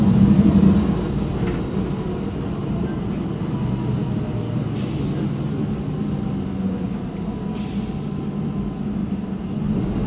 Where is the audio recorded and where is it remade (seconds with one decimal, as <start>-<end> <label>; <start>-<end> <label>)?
0.0-9.0 recorded; 9.0-10.1 remade